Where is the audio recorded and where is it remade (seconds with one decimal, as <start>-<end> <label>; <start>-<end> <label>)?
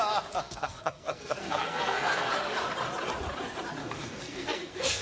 0.0-0.4 recorded; 0.4-2.3 remade; 2.3-3.8 recorded; 3.8-5.0 remade